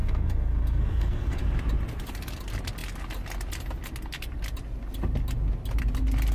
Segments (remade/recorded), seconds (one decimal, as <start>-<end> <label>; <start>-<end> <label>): 0.0-1.4 remade; 1.4-6.3 recorded